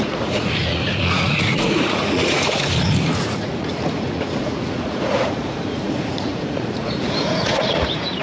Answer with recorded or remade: remade